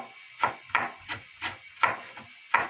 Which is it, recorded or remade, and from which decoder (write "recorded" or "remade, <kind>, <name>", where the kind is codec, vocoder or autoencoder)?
remade, vocoder, Vocos